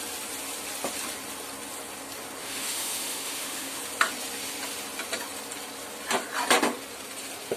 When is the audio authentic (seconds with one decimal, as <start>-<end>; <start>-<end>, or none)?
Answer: 0.0-2.4; 3.8-7.6

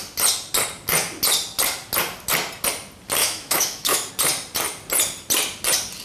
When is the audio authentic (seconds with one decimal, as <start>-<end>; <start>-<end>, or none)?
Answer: 0.0-3.2; 4.1-6.0

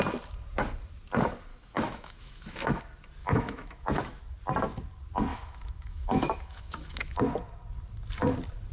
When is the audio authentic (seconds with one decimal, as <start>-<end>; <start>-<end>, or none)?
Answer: 0.0-1.5; 2.8-3.2; 4.2-5.3; 7.2-8.7

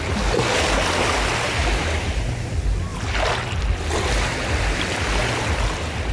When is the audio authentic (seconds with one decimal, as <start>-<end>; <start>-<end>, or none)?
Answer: 0.0-6.1